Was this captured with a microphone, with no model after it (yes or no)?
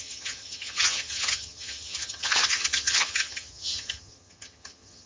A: no